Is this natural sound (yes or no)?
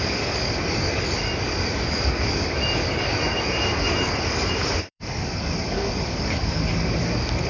no